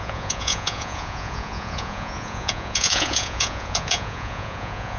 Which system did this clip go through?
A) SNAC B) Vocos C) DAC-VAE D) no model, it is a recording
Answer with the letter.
B